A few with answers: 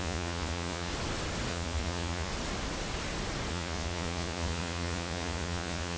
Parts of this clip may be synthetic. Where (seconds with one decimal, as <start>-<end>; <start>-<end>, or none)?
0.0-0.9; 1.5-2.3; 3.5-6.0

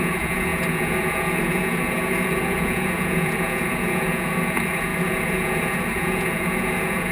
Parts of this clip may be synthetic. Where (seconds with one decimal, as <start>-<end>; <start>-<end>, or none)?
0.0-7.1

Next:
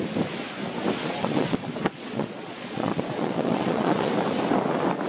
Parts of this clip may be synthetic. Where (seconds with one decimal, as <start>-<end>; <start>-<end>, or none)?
1.0-4.1

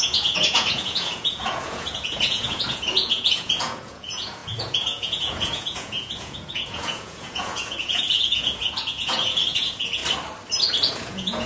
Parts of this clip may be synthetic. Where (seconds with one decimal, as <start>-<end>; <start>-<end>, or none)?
0.0-10.0; 10.9-11.5

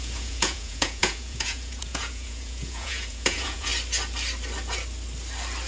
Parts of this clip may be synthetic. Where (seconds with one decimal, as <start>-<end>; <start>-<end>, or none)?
0.0-3.7